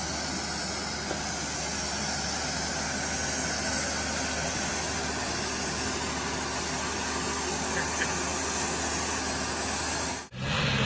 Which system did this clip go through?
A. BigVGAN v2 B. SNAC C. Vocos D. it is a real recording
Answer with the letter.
D